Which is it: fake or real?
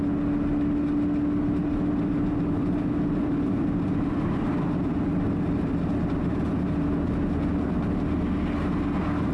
real